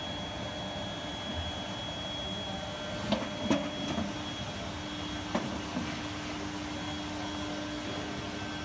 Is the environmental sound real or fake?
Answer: real